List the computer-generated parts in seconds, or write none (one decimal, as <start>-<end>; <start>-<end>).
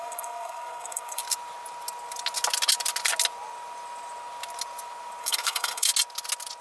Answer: 0.0-1.2; 5.2-5.9